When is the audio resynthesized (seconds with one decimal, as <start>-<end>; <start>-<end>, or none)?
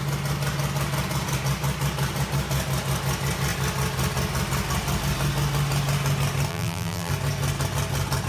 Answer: 6.5-7.1